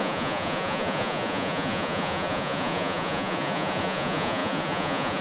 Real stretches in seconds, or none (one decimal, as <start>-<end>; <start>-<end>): none